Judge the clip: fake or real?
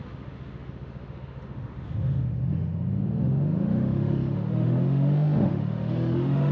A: fake